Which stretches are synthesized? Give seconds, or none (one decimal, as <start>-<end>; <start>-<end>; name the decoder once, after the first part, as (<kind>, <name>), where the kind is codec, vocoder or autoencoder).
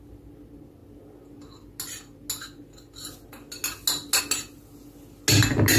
none